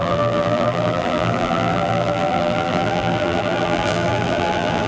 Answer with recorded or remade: remade